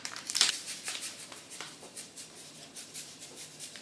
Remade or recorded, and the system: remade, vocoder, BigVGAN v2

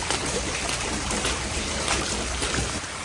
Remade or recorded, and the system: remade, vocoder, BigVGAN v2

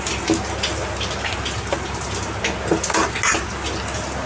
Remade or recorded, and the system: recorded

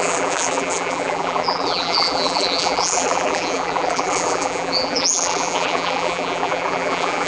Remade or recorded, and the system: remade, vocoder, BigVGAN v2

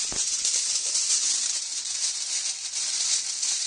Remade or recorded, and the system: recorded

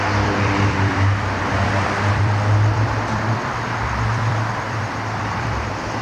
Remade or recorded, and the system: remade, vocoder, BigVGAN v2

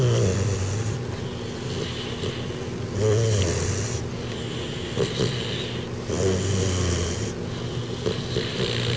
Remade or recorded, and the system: recorded